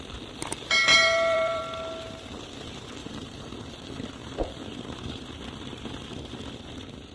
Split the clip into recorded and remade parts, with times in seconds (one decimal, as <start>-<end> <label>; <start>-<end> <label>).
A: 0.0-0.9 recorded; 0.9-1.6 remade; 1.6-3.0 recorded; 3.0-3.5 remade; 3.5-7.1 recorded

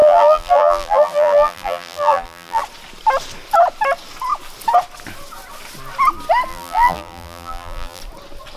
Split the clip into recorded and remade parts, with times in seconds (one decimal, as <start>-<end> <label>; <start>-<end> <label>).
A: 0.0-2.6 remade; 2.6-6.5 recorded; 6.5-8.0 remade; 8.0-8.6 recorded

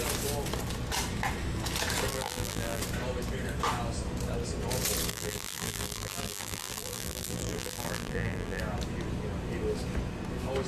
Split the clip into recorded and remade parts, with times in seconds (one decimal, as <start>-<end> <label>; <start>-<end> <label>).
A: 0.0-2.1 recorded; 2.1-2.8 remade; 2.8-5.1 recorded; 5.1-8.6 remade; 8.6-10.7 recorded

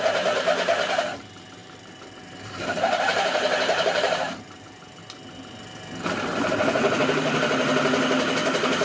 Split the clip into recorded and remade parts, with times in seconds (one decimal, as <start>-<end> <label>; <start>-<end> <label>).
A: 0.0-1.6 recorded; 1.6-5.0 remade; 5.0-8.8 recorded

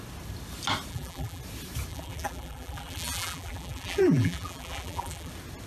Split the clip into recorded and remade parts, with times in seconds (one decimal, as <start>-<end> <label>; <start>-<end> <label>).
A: 0.0-0.9 recorded; 0.9-1.4 remade; 1.4-1.9 recorded; 1.9-5.3 remade; 5.3-5.7 recorded

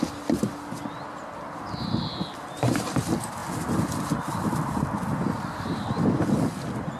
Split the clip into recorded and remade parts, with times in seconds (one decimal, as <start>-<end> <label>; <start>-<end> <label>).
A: 0.0-7.0 recorded

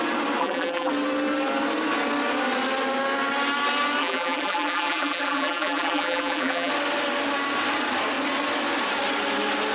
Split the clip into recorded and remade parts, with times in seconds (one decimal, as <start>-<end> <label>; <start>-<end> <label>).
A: 0.0-0.4 recorded; 0.4-0.9 remade; 0.9-4.0 recorded; 4.0-6.7 remade; 6.7-9.7 recorded

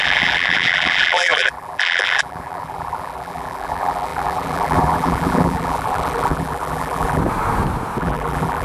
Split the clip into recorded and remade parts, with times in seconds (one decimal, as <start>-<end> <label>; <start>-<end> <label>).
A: 0.0-7.2 remade; 7.2-8.0 recorded; 8.0-8.6 remade